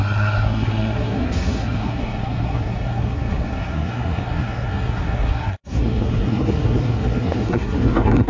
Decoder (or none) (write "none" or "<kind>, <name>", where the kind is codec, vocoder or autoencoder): codec, SNAC